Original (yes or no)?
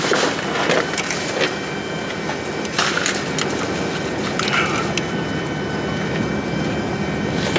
yes